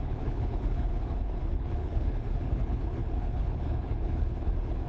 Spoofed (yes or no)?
yes